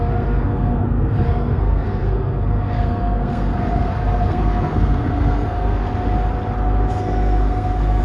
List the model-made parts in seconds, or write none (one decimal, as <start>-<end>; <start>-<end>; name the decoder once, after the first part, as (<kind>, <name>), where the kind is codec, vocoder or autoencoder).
0.0-5.9 (codec, SNAC); 6.9-8.0